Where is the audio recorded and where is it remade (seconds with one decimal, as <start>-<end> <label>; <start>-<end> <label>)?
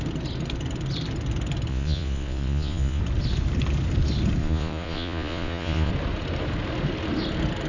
0.0-1.7 recorded; 1.7-3.0 remade; 3.0-4.4 recorded; 4.4-5.9 remade; 5.9-7.7 recorded